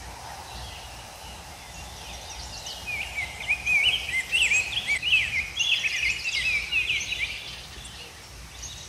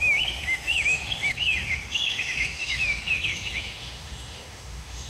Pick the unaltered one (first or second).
first